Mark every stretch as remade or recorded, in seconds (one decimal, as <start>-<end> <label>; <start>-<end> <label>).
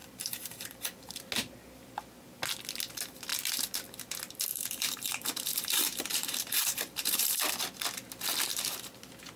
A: 0.0-1.3 remade; 1.3-4.5 recorded; 4.5-7.4 remade; 7.4-9.4 recorded